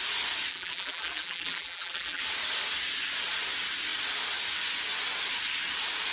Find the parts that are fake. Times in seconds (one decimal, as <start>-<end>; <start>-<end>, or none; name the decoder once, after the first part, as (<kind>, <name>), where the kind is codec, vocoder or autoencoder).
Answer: 0.5-2.2 (vocoder, BigVGAN v2)